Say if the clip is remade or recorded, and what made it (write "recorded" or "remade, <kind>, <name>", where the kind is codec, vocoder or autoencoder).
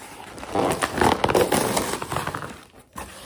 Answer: recorded